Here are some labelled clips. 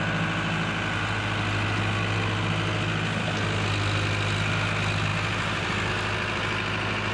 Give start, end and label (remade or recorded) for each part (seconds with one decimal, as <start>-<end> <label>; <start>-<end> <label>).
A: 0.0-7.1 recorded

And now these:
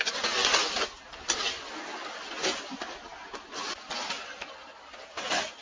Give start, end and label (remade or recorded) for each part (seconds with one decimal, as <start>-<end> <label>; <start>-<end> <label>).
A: 0.0-5.6 recorded

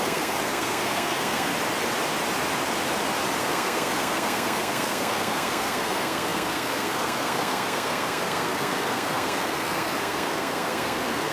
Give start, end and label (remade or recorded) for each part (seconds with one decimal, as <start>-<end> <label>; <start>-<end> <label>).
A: 0.0-1.5 remade; 1.5-3.4 recorded; 3.4-11.3 remade

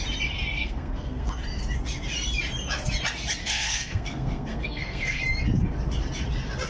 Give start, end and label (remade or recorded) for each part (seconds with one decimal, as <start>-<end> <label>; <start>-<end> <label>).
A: 0.0-0.6 recorded; 0.6-1.3 remade; 1.3-3.4 recorded; 3.4-5.2 remade; 5.2-6.7 recorded

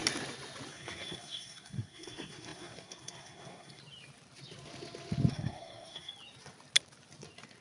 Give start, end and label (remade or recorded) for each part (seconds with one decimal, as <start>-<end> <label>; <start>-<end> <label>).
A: 0.0-0.7 recorded; 0.7-3.8 remade; 3.8-5.3 recorded; 5.3-6.1 remade; 6.1-7.6 recorded

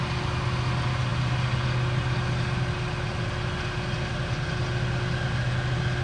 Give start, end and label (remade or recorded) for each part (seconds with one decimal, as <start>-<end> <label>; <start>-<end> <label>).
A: 0.0-6.0 recorded

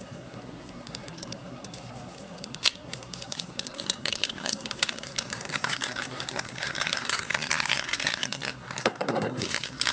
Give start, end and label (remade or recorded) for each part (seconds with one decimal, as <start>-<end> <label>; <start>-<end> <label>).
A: 0.0-9.9 remade